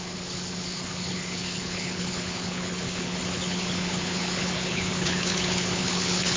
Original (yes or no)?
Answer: no